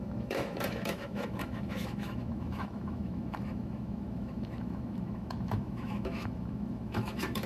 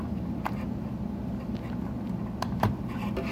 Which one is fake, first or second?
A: first